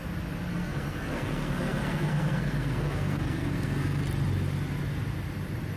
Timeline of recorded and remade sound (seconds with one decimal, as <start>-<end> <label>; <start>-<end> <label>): 0.0-0.5 recorded; 0.5-4.0 remade; 4.0-5.8 recorded